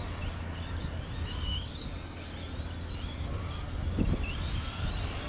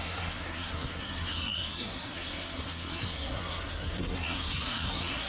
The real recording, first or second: first